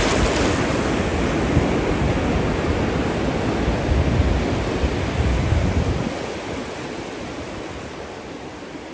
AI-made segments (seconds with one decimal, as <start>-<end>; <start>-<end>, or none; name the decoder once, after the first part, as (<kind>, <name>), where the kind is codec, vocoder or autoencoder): none